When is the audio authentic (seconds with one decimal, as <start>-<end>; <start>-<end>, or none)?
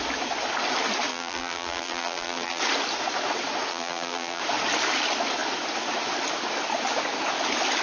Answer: 0.0-1.1; 2.6-3.7; 4.4-7.8